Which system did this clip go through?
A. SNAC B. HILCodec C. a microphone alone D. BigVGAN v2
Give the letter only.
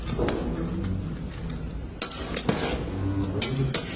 C